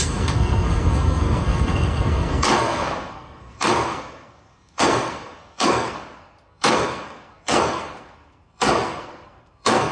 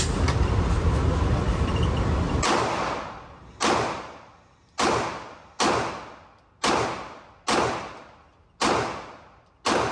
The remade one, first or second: first